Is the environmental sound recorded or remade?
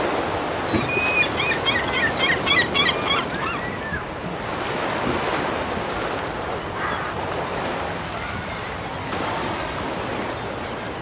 recorded